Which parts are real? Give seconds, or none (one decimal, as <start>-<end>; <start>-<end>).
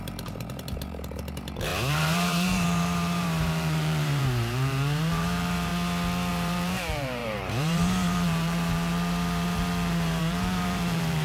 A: 5.7-6.3